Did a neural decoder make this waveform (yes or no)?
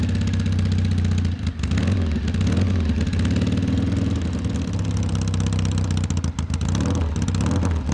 no